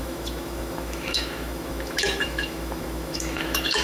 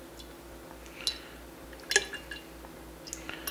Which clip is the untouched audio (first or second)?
second